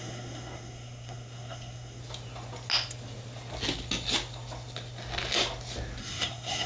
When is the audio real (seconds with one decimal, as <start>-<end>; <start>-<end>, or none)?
2.0-6.0